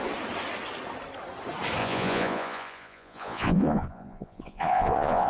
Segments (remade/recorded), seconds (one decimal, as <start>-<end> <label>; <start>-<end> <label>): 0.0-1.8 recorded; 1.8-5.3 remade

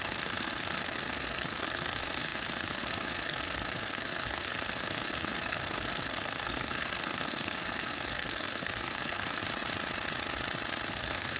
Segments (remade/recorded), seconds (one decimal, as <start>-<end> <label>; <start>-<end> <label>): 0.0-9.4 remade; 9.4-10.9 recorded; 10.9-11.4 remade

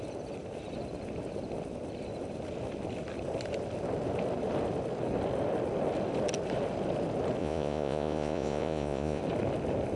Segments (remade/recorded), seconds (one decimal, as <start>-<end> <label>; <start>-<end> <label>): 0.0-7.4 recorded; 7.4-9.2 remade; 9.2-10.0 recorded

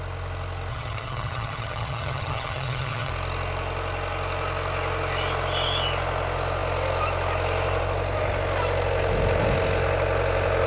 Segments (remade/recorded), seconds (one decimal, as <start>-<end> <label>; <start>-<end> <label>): 0.0-0.7 recorded; 0.7-3.1 remade; 3.1-10.7 recorded

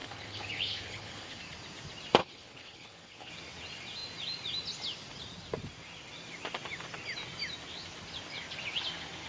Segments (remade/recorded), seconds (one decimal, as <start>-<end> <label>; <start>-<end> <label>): 0.0-1.4 remade; 1.4-2.2 recorded; 2.2-3.3 remade; 3.3-9.3 recorded